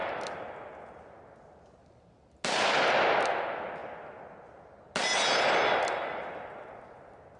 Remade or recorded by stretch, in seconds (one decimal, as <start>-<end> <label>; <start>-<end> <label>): 0.0-7.4 recorded